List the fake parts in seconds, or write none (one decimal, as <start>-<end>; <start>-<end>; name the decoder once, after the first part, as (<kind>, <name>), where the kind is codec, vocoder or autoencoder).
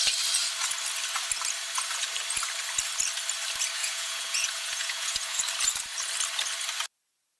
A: 3.8-5.4 (vocoder, Vocos)